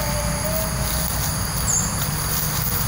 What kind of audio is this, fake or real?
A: real